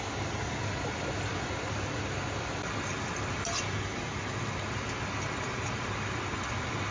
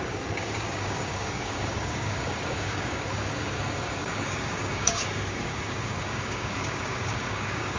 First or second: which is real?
first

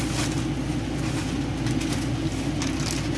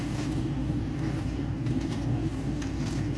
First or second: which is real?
first